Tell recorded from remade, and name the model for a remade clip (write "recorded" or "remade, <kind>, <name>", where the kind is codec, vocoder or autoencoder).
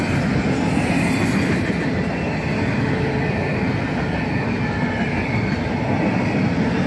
recorded